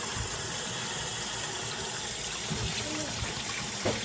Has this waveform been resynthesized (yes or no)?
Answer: no